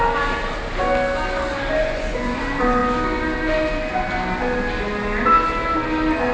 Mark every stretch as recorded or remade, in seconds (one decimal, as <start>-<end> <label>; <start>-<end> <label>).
0.0-1.8 recorded; 1.8-2.4 remade; 2.4-6.3 recorded